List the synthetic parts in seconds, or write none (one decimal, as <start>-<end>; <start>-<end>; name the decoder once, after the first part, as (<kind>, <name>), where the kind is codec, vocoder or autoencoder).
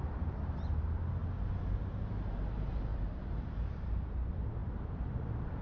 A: 0.0-1.2 (vocoder, BigVGAN v2); 1.8-5.6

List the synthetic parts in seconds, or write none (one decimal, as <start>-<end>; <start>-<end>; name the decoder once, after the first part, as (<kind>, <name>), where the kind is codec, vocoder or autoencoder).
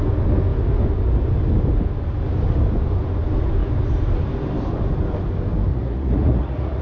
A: 5.7-6.8 (vocoder, Vocos)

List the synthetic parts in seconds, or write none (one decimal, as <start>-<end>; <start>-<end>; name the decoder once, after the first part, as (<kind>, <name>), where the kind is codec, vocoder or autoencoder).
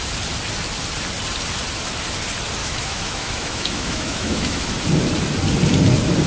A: 2.6-4.7 (autoencoder, DAC-VAE)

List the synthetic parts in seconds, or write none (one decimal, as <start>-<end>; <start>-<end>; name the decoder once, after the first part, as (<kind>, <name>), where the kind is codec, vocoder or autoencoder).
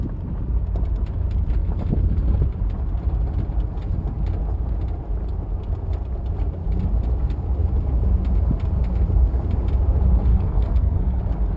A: 10.3-11.2 (codec, SNAC)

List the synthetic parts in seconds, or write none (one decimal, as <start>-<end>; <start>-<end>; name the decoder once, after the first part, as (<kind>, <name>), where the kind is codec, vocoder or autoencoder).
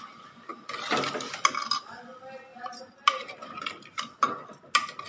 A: none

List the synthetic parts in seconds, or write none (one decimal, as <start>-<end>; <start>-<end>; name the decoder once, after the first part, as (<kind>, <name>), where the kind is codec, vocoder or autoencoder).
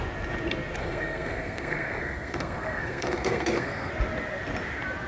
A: 0.8-3.9 (codec, SNAC)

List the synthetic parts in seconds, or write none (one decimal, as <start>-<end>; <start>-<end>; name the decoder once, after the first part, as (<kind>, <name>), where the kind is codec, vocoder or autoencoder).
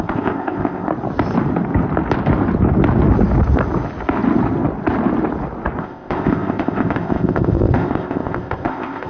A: 0.0-0.9 (codec, ZipCodec); 5.8-9.1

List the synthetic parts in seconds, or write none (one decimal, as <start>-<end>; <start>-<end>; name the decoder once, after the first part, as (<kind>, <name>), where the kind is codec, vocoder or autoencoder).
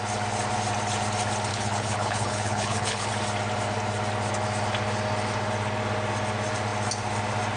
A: 1.5-3.1 (codec, HILCodec)